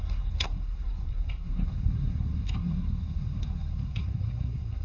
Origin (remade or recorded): remade